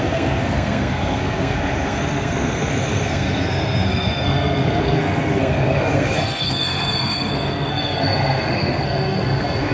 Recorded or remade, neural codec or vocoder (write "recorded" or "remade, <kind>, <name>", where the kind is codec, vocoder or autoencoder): remade, codec, SNAC